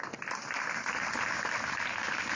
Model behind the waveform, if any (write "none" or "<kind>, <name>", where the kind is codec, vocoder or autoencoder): none